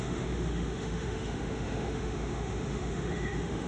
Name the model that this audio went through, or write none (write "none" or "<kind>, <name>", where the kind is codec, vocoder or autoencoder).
autoencoder, DAC-VAE